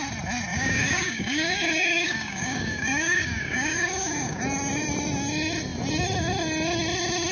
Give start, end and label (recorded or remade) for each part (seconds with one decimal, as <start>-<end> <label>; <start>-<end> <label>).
0.0-0.5 recorded; 0.5-4.4 remade; 4.4-7.3 recorded